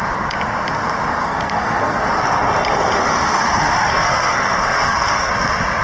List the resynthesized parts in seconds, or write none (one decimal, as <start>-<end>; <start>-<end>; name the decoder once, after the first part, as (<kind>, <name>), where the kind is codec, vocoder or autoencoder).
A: 1.2-2.0 (codec, SNAC); 3.9-5.3